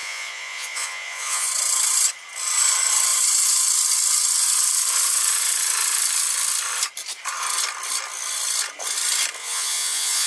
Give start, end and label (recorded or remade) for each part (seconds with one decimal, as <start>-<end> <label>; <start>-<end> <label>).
0.0-1.5 remade; 1.5-9.4 recorded; 9.4-10.3 remade

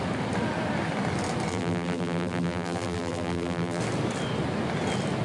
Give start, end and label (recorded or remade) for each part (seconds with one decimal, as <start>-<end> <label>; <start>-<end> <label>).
0.0-1.5 recorded; 1.5-3.8 remade; 3.8-5.2 recorded

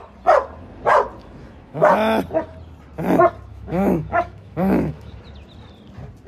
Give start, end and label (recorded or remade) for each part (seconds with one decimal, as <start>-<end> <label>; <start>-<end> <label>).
0.0-1.2 recorded; 1.2-1.9 remade; 1.9-3.5 recorded; 3.5-5.2 remade; 5.2-6.3 recorded

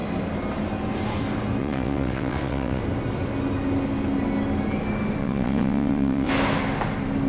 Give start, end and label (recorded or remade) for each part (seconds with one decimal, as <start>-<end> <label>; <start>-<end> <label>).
0.0-1.6 recorded; 1.6-2.8 remade; 2.8-5.2 recorded; 5.2-6.3 remade; 6.3-7.3 recorded